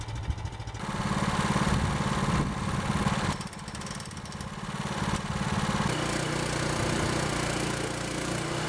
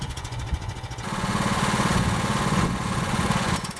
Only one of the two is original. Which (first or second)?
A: first